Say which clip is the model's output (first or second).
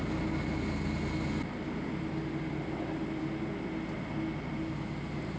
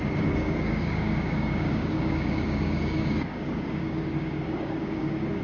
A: second